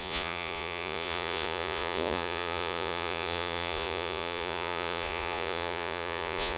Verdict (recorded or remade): remade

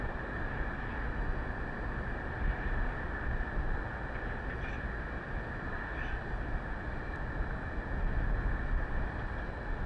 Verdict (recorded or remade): recorded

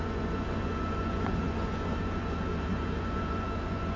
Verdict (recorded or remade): remade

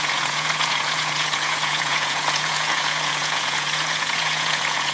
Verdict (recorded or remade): remade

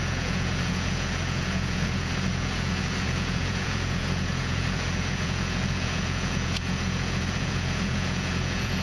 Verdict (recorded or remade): remade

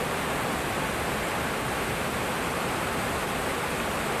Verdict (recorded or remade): recorded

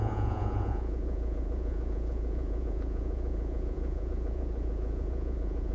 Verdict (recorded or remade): remade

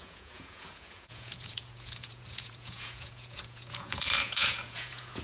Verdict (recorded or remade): remade